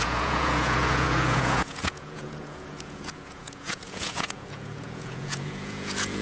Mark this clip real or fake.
fake